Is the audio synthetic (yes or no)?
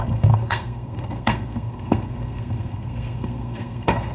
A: yes